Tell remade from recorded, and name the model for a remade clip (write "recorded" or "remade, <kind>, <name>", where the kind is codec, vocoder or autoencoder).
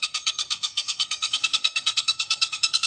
remade, codec, SNAC